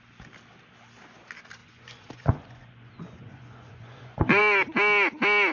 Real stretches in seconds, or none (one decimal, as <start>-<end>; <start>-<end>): 0.0-1.6; 4.4-5.5